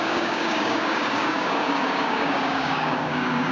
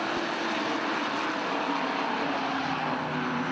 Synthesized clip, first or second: first